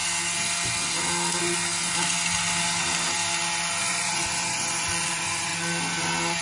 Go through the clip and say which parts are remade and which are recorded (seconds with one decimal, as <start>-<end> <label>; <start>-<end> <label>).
0.0-3.8 recorded; 3.8-5.5 remade; 5.5-6.4 recorded